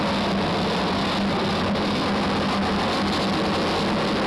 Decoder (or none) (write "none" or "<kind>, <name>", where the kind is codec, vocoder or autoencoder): none